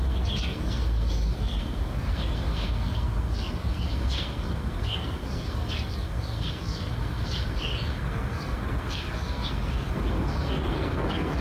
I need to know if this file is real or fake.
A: fake